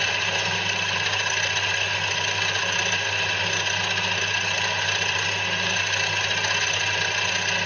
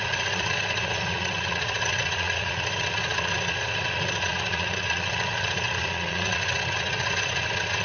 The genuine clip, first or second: first